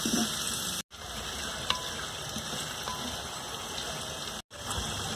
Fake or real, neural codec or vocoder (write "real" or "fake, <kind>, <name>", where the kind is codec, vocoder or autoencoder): real